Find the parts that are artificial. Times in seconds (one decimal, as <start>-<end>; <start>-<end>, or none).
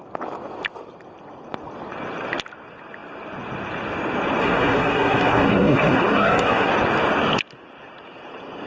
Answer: 4.4-6.7